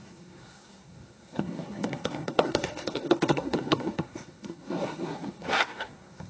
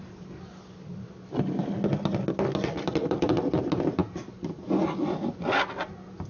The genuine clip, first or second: second